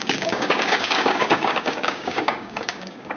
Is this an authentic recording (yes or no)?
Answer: no